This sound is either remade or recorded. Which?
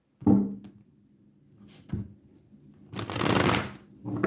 recorded